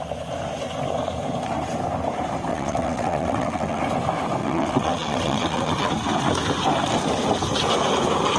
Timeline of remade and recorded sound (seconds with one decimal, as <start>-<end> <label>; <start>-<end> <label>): 0.0-2.5 recorded; 2.5-3.8 remade; 3.8-4.4 recorded; 4.4-5.9 remade; 5.9-8.4 recorded